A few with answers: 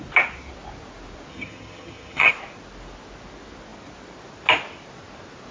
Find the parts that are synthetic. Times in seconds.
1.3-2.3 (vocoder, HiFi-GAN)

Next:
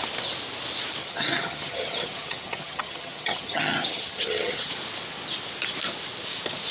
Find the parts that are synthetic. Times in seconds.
1.0-4.7 (vocoder, HiFi-GAN)

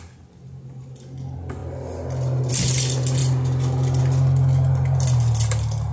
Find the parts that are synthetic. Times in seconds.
none